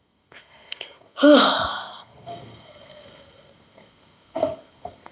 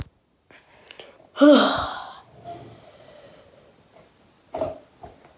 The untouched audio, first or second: second